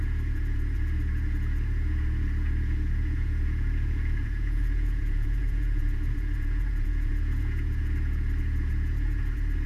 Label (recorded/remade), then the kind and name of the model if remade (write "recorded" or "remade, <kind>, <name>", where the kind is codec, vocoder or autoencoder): remade, vocoder, Vocos